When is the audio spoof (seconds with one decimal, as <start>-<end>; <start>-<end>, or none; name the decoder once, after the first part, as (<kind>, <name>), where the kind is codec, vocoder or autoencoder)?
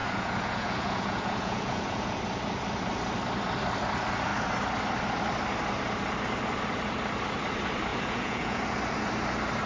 0.0-2.2 (vocoder, Vocos); 7.9-8.6